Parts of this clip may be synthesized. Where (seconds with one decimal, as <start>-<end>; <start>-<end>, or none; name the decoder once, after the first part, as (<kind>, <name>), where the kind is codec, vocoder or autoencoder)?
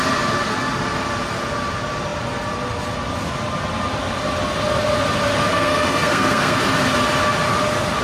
5.5-6.6 (codec, SNAC)